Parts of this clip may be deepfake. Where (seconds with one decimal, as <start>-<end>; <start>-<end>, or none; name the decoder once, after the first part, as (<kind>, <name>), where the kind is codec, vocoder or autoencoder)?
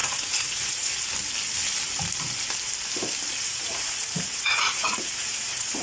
0.0-1.0 (vocoder, Vocos); 3.4-5.8